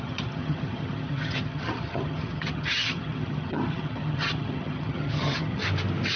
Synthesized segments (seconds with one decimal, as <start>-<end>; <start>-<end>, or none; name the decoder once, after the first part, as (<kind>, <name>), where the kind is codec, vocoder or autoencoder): 0.0-5.6 (vocoder, HiFi-GAN)